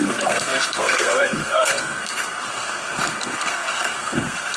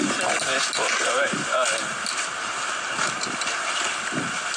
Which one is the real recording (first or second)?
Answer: second